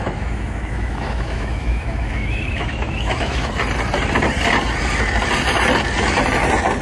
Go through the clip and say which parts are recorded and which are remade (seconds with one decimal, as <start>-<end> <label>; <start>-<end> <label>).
0.0-3.5 remade; 3.5-6.8 recorded